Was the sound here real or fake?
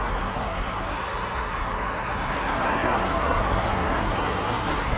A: fake